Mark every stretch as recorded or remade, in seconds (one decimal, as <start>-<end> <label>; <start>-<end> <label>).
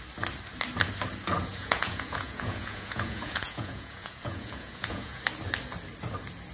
0.0-1.5 recorded; 1.5-5.2 remade; 5.2-6.5 recorded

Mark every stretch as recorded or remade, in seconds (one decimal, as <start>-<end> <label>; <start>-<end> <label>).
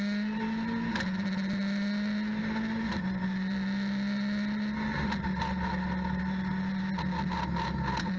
0.0-8.2 recorded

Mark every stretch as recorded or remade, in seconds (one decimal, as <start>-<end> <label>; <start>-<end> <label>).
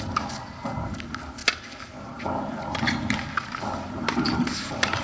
0.0-5.0 recorded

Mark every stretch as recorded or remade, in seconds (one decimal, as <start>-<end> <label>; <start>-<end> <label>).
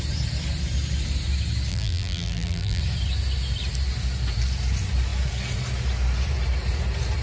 0.0-1.7 recorded; 1.7-2.8 remade; 2.8-7.2 recorded